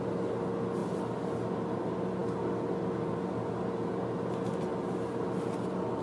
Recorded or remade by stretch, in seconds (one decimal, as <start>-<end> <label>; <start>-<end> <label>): 0.0-6.0 recorded